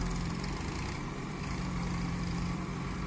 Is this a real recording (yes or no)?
no